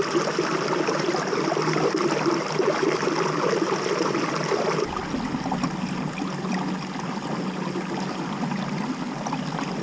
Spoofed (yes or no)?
no